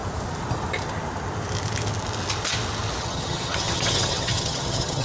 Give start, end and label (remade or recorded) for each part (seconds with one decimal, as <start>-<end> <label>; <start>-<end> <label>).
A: 0.0-3.0 recorded; 3.0-5.0 remade